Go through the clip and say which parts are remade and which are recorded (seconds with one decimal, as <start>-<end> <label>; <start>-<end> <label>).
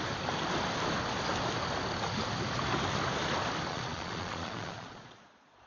0.0-3.7 recorded; 3.7-5.7 remade